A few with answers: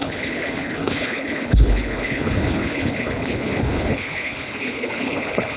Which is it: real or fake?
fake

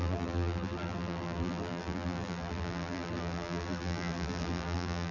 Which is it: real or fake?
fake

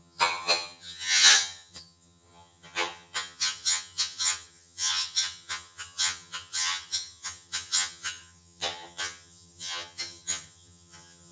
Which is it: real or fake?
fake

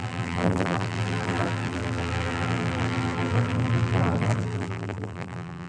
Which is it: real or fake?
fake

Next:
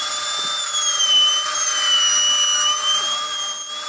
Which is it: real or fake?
real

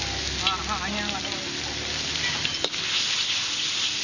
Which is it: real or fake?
real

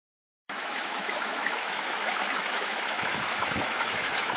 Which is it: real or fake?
fake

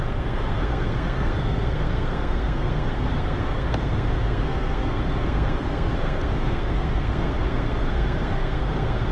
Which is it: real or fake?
fake